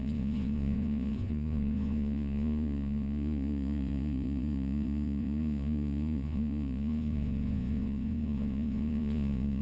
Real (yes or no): no